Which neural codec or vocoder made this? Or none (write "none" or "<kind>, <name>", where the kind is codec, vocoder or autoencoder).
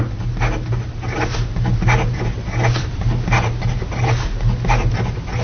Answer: none